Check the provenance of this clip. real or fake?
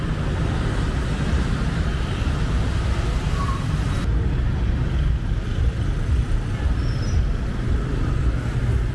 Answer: real